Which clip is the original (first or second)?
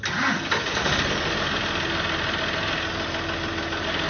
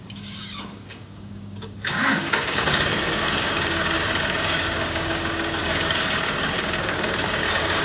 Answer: first